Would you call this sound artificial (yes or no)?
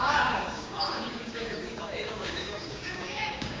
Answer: yes